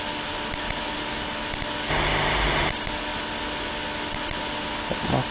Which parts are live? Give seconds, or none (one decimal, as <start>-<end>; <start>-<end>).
0.0-1.9; 2.7-5.3